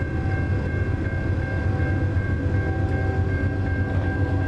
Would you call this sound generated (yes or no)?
no